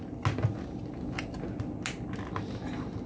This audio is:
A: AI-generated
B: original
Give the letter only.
B